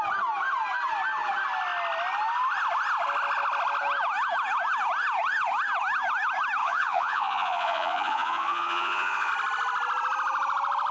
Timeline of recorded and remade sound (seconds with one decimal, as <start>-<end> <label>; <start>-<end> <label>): 0.0-6.6 recorded; 6.6-9.3 remade; 9.3-10.9 recorded